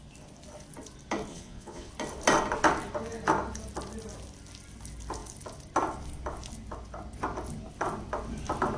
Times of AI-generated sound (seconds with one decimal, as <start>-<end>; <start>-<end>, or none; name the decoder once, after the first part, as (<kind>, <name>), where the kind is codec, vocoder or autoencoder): 1.3-1.9 (vocoder, Vocos)